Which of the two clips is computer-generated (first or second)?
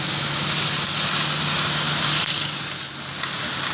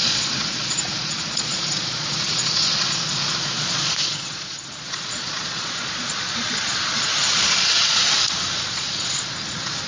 second